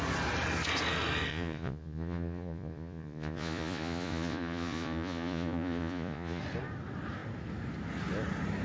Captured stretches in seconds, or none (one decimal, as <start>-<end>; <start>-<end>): 0.0-1.3; 6.4-8.6